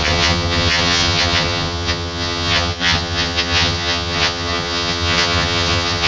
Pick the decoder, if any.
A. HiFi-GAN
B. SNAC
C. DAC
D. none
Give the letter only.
A